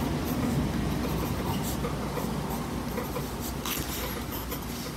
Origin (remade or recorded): recorded